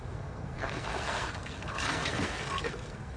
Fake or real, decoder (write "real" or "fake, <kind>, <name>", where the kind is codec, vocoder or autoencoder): fake, codec, SNAC